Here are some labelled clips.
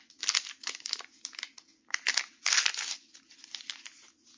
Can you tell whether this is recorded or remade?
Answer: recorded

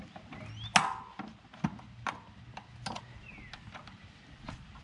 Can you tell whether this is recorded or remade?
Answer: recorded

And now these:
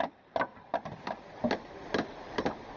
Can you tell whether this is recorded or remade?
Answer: recorded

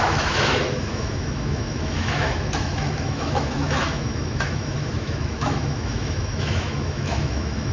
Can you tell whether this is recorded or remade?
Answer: remade